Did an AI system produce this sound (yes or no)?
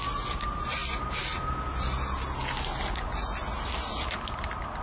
no